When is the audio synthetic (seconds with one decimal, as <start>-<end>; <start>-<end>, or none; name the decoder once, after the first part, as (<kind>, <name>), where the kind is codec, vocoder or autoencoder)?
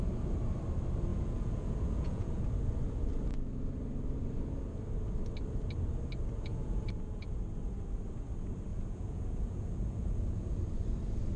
1.1-2.4 (vocoder, Vocos); 6.5-7.4; 8.7-10.6